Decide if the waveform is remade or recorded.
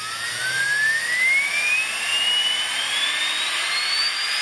recorded